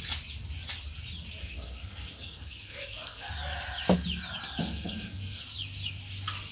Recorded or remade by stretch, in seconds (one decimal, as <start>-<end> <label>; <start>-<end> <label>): 0.0-1.4 recorded; 1.4-3.3 remade; 3.3-4.6 recorded; 4.6-5.4 remade; 5.4-6.5 recorded